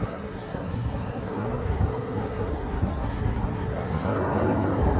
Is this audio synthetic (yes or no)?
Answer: yes